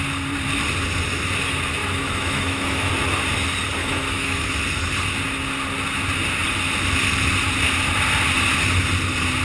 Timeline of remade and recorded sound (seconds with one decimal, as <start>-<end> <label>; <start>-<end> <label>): 0.0-1.8 recorded; 1.8-2.9 remade; 2.9-3.8 recorded; 3.8-4.5 remade; 4.5-9.4 recorded